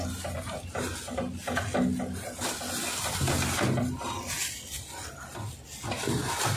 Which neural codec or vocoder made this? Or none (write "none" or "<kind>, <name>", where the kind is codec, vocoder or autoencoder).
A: none